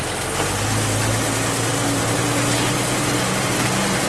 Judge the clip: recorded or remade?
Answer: recorded